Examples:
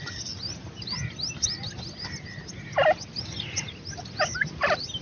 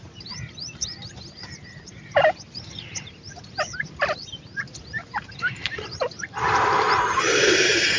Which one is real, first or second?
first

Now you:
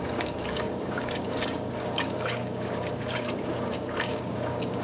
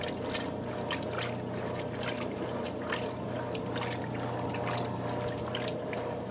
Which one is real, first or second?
second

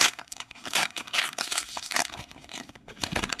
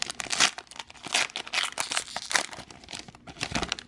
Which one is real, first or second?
second